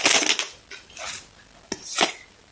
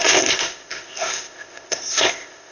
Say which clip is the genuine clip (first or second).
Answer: first